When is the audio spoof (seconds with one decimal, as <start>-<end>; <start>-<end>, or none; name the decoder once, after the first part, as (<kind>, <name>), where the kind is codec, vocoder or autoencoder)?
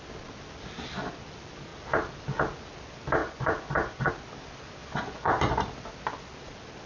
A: 3.2-4.1 (vocoder, Vocos); 4.8-5.5